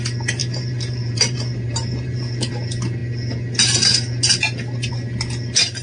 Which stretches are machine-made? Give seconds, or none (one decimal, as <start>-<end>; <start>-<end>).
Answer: 0.4-2.5